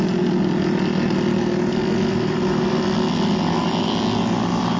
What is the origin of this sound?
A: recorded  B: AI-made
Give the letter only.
A